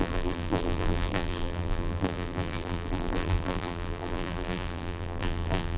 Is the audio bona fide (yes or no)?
no